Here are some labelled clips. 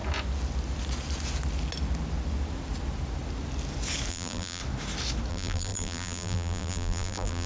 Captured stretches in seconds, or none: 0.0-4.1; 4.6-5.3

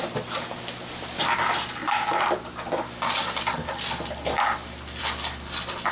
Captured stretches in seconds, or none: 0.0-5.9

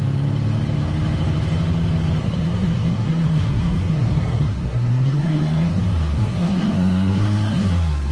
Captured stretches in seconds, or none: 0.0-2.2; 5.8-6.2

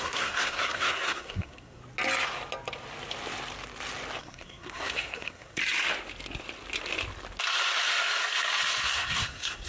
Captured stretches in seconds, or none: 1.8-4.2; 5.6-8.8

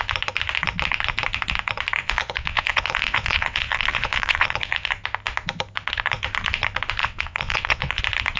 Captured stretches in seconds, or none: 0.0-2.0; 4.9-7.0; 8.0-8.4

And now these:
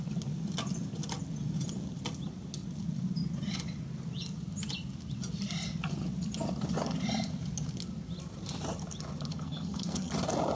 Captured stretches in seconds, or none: 0.0-9.3; 10.1-10.6

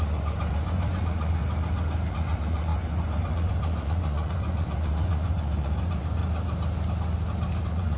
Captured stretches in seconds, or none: 1.4-2.1; 6.2-7.6